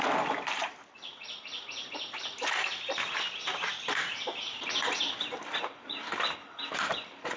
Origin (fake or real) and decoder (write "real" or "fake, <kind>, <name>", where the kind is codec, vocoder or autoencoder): real